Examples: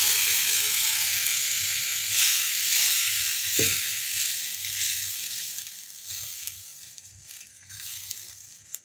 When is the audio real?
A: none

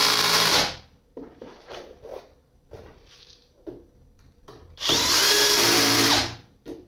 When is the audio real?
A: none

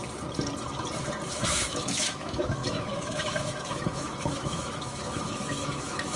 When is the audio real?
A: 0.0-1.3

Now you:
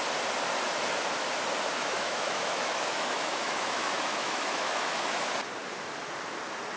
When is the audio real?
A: 0.0-1.8; 5.3-6.8